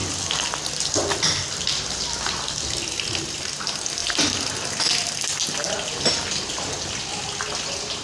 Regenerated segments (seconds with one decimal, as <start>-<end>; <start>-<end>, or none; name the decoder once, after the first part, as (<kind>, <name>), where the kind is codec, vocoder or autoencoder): none